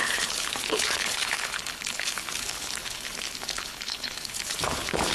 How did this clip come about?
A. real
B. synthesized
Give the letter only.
B